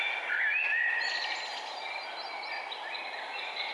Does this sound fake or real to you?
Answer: real